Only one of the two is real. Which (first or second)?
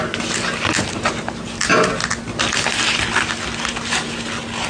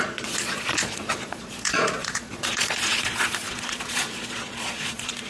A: first